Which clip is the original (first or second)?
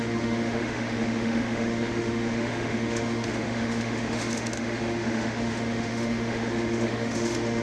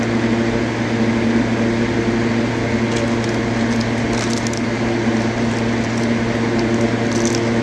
second